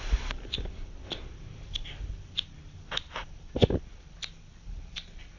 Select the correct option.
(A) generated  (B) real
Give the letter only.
B